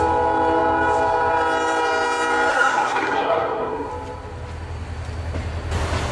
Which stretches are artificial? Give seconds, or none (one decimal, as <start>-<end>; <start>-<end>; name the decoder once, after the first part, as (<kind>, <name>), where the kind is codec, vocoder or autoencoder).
2.5-3.9 (codec, SNAC)